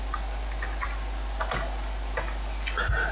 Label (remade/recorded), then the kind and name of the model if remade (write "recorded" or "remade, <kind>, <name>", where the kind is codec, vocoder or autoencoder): recorded